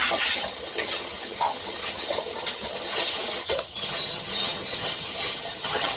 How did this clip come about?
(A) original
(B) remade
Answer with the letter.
B